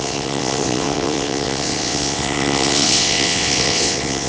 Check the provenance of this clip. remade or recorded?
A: remade